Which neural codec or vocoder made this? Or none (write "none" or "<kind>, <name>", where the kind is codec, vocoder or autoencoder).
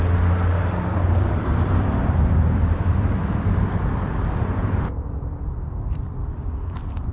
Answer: vocoder, BigVGAN v2